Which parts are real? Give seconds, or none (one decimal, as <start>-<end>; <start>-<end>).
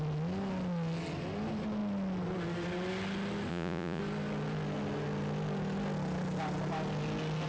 0.0-3.5; 4.0-7.5